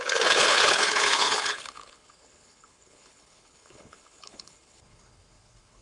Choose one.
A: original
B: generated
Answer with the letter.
B